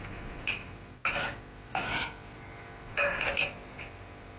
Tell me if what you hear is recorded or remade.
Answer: recorded